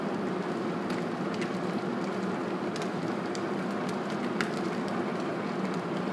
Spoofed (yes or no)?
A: no